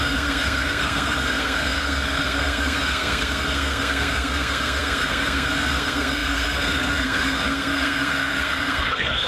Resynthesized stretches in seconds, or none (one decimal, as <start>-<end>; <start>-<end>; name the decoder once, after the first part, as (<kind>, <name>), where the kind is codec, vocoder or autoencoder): 0.0-9.3 (codec, SNAC)